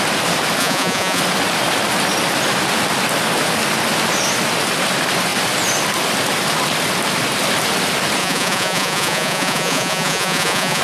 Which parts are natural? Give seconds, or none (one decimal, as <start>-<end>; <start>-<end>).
0.0-0.6; 1.2-8.2